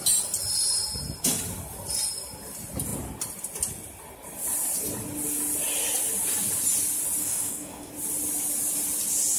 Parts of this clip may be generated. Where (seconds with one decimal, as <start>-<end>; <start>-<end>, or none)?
7.2-7.9